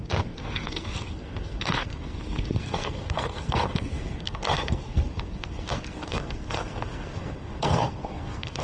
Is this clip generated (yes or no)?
yes